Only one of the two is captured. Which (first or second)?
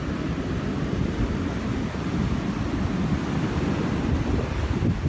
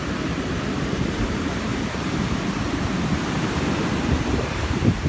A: first